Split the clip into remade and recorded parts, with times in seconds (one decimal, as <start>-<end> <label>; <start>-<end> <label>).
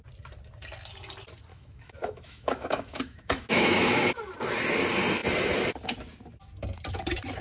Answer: 0.0-1.5 recorded; 1.5-4.1 remade; 4.1-7.4 recorded